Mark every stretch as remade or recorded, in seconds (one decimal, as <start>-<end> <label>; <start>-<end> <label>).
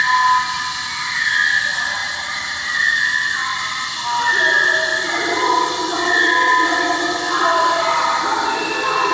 0.0-2.0 recorded; 2.0-2.8 remade; 2.8-4.9 recorded; 4.9-5.5 remade; 5.5-7.6 recorded; 7.6-8.5 remade; 8.5-9.1 recorded